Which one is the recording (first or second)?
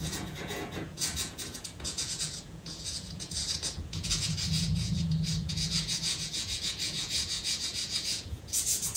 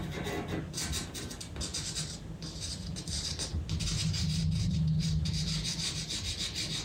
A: second